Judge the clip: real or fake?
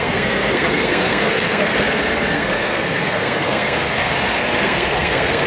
fake